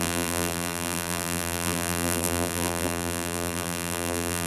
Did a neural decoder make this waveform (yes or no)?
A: yes